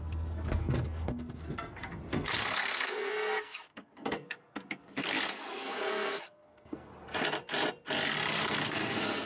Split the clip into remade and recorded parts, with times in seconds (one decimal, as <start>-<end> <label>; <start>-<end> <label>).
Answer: 0.0-6.9 remade; 6.9-8.3 recorded; 8.3-9.3 remade